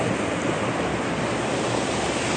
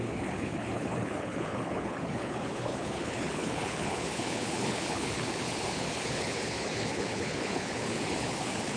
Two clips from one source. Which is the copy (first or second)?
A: second